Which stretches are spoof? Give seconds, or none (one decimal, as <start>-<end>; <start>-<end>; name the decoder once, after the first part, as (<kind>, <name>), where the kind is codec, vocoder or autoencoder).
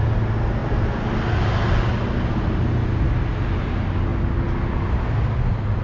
none